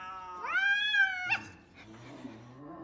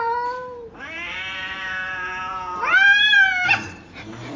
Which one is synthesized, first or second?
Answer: second